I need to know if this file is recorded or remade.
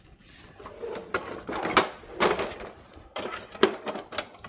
recorded